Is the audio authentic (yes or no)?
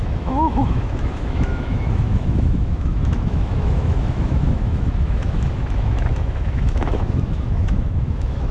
no